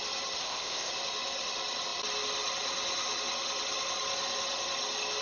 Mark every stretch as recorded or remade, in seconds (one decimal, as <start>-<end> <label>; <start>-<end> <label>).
0.0-0.4 recorded; 0.4-0.9 remade; 0.9-5.2 recorded